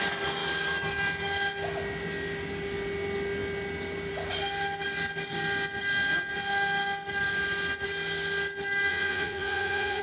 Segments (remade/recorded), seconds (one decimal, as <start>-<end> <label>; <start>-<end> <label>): 0.0-8.9 recorded; 8.9-10.0 remade